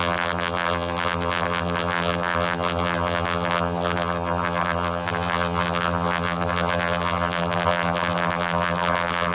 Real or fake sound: fake